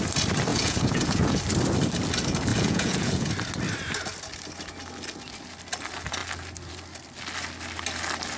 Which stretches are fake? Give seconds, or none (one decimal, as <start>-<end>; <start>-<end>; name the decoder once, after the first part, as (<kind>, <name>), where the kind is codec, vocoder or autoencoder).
0.5-1.4 (vocoder, Vocos); 2.5-3.3